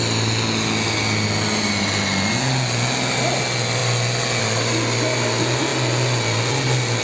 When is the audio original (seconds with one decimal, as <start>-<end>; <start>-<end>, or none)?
0.0-7.0